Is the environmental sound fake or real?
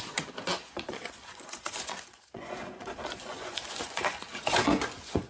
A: fake